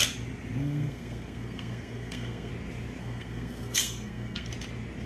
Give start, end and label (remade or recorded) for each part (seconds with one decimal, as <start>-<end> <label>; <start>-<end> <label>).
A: 0.0-0.6 recorded; 0.6-2.5 remade; 2.5-3.0 recorded; 3.0-4.5 remade; 4.5-5.1 recorded